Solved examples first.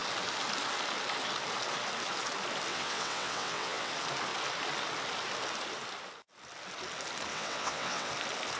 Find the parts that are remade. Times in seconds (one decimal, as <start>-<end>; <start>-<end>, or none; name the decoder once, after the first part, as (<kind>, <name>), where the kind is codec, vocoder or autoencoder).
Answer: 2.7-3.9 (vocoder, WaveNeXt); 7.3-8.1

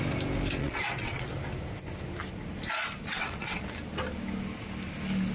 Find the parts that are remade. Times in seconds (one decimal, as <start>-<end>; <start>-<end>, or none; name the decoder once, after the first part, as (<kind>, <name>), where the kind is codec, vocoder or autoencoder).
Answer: 0.6-1.3 (vocoder, WaveNeXt); 3.1-3.6

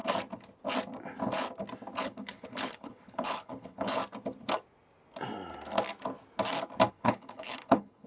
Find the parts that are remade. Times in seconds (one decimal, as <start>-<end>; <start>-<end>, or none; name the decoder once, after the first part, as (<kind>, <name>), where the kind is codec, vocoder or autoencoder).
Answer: 2.0-4.0 (codec, HILCodec); 6.9-8.1